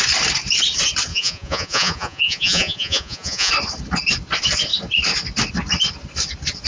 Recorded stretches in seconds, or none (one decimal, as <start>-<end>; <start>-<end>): 0.0-1.1; 3.5-6.7